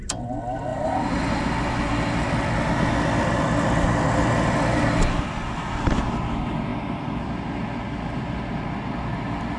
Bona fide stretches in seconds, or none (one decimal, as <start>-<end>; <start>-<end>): 0.0-0.7; 1.4-9.6